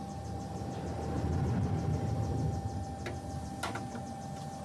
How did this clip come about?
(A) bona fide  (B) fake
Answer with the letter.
A